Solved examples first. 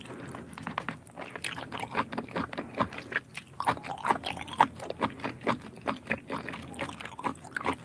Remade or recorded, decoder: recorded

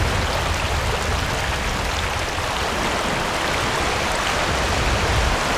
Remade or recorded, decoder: recorded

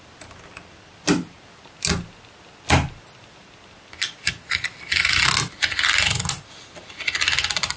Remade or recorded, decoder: recorded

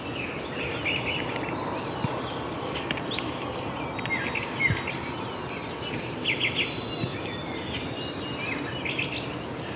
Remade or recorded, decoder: recorded